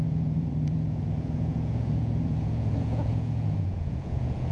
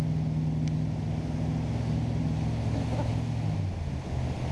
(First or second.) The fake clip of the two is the first